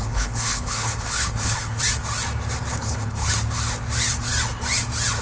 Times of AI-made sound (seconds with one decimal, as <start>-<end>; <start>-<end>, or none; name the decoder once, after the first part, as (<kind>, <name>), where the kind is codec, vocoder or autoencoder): 0.0-1.8 (codec, HILCodec); 2.7-3.3